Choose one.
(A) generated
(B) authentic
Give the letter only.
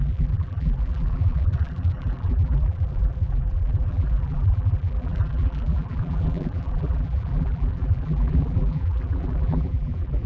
A